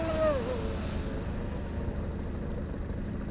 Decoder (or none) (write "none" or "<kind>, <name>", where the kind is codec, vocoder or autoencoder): none